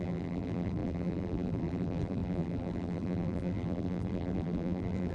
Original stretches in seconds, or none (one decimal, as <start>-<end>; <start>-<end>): none